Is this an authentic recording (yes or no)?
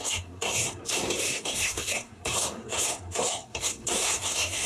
no